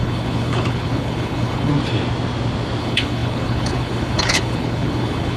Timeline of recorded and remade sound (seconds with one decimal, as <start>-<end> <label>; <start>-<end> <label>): 0.0-1.7 remade; 1.7-2.8 recorded; 2.8-5.4 remade